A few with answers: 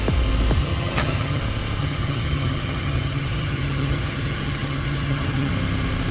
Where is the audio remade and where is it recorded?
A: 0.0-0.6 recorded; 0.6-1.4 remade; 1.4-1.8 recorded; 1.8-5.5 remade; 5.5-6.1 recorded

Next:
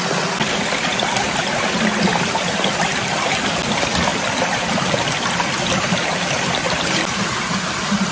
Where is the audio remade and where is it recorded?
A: 0.0-4.1 recorded; 4.1-4.9 remade; 4.9-8.1 recorded

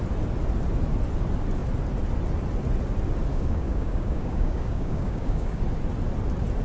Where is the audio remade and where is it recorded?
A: 0.0-3.3 recorded; 3.3-5.6 remade; 5.6-6.6 recorded

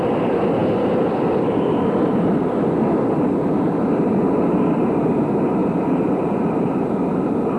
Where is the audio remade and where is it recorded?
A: 0.0-5.6 recorded; 5.6-6.9 remade; 6.9-7.6 recorded